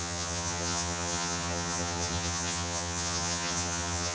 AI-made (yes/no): yes